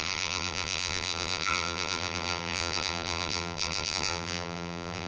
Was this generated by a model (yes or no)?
yes